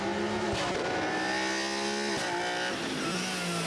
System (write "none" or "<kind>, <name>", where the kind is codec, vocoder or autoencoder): none